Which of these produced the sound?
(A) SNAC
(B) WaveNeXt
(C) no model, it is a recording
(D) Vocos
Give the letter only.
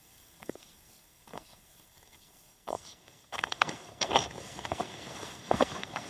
A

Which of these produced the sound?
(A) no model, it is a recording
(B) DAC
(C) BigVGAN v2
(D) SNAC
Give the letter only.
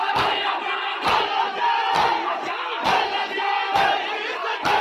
A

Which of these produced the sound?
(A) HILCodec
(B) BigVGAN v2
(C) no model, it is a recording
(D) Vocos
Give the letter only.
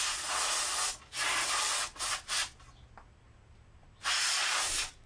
C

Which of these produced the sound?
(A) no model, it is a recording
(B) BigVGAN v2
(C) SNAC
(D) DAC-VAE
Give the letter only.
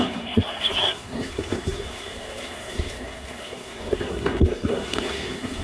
C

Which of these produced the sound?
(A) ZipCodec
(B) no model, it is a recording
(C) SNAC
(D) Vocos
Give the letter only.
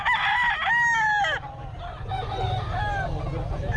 B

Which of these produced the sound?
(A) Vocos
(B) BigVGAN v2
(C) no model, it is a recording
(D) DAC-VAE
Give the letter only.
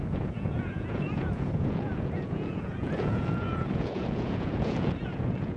A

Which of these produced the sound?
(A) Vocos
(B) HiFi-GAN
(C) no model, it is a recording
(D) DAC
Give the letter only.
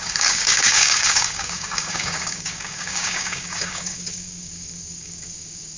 D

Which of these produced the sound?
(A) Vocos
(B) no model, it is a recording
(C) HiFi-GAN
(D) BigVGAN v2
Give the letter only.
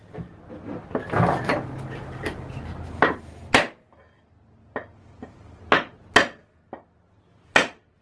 B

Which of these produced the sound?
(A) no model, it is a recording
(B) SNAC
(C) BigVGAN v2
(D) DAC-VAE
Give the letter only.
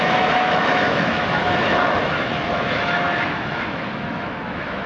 D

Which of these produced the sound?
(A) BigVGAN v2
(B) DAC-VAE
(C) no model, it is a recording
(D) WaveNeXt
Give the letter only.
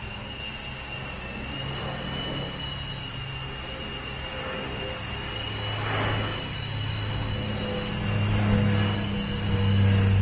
C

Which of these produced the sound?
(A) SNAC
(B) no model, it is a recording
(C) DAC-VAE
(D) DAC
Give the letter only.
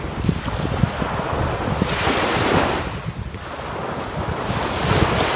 B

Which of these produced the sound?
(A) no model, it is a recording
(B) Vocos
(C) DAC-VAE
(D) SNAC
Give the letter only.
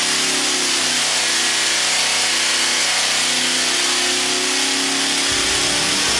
A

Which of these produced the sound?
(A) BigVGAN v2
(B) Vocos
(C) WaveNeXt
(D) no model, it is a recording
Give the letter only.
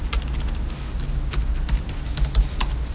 D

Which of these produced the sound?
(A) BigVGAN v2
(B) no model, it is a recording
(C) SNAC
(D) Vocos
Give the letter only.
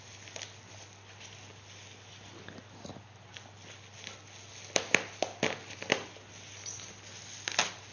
B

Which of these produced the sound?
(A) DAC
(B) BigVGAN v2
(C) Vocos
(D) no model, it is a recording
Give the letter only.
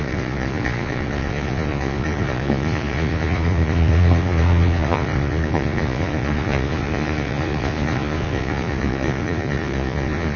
C